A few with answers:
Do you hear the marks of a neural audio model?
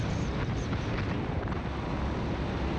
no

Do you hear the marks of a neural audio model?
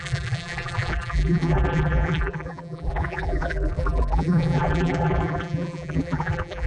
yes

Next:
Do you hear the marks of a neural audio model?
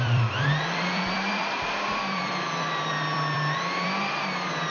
yes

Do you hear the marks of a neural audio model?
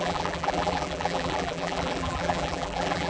yes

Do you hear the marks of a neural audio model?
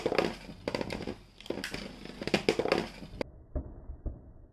no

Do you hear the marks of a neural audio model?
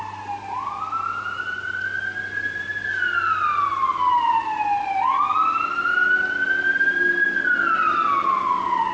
no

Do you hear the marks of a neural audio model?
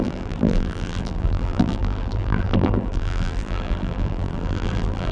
yes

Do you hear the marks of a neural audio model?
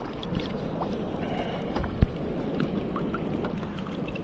no